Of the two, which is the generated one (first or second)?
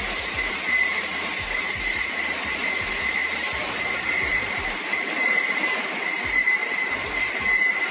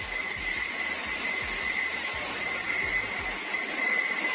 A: first